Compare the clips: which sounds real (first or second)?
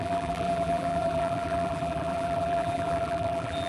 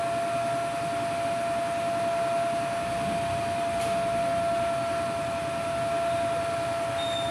second